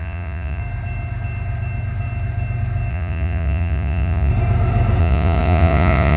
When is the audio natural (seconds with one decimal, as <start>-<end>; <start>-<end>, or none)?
0.6-2.9; 4.3-5.0